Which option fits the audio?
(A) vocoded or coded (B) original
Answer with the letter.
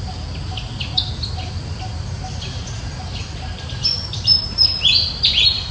B